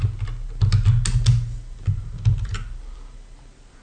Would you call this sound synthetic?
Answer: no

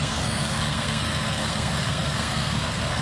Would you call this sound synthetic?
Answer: yes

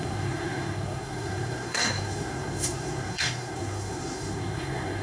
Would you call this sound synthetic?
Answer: yes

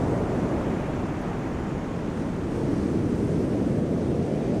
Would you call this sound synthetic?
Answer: no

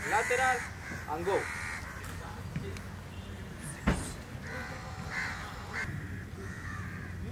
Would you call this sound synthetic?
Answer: no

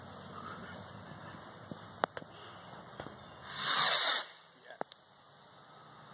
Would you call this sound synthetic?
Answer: no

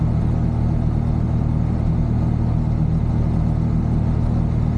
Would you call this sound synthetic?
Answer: no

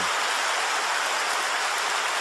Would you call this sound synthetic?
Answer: no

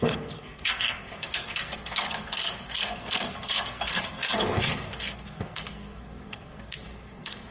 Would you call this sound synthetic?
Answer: yes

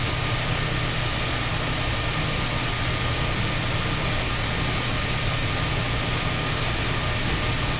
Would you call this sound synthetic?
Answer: no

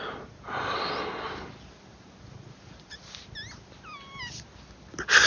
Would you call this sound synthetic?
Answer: no